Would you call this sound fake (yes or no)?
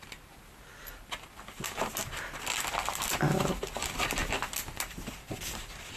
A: no